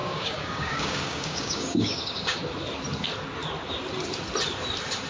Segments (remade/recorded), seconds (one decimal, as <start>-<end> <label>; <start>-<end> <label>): 0.0-2.4 remade; 2.4-5.1 recorded